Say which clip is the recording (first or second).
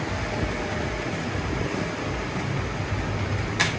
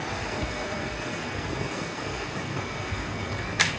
first